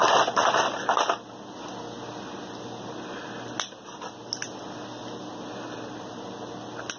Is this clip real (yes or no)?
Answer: yes